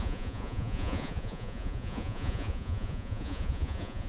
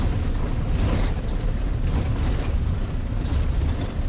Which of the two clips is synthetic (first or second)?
first